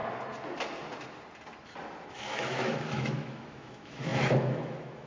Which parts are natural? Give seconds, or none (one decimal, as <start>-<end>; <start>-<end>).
0.0-2.1